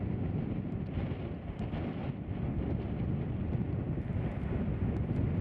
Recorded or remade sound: recorded